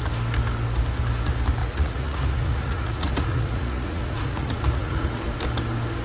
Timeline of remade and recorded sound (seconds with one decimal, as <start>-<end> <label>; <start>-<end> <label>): 0.0-1.6 recorded; 1.6-5.2 remade; 5.2-6.0 recorded

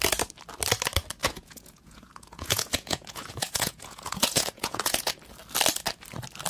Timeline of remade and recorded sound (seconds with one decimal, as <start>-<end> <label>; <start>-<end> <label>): 0.0-1.2 recorded; 1.2-5.1 remade; 5.1-6.5 recorded

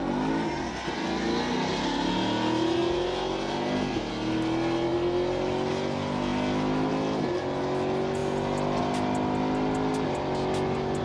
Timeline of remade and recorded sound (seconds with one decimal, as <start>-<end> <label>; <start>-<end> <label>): 0.0-11.0 recorded

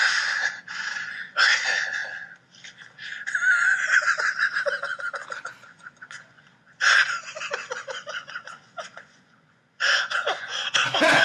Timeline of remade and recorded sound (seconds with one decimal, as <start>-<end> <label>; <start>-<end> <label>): 0.0-2.0 remade; 2.0-5.4 recorded; 5.4-11.2 remade

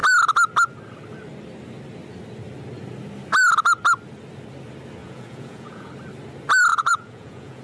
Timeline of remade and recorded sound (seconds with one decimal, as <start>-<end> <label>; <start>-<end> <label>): 0.0-5.0 recorded; 5.0-5.9 remade; 5.9-6.7 recorded; 6.7-7.6 remade

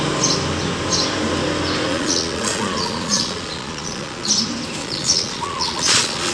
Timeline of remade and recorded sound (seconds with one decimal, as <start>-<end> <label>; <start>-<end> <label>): 0.0-1.9 recorded; 1.9-4.3 remade; 4.3-4.8 recorded; 4.8-6.3 remade